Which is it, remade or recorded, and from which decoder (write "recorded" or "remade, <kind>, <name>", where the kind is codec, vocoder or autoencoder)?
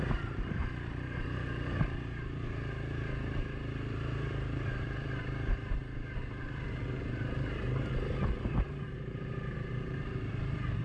remade, vocoder, BigVGAN v2